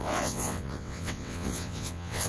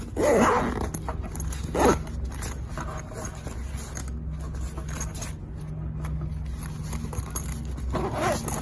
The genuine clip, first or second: second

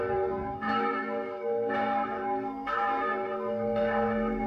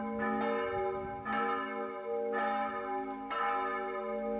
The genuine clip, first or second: second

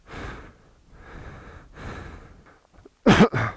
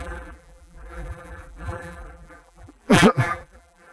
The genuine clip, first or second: first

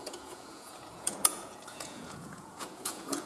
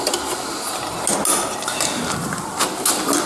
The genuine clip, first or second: second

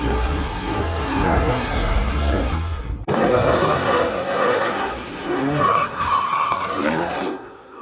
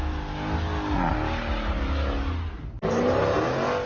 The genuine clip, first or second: second